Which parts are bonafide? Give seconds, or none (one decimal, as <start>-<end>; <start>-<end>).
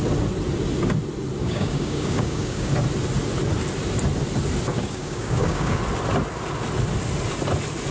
0.0-1.4; 2.7-4.7; 5.8-7.9